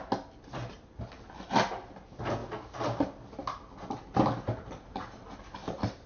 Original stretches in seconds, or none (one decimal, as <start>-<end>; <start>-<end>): 0.0-6.1